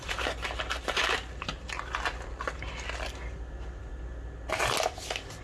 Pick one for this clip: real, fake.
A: real